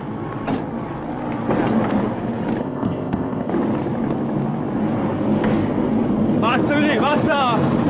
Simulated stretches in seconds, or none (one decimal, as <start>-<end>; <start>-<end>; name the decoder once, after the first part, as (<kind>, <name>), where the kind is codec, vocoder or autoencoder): 2.6-3.5 (codec, ZipCodec)